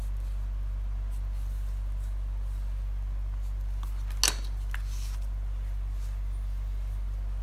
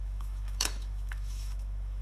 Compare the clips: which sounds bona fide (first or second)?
first